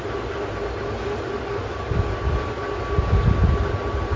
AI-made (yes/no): no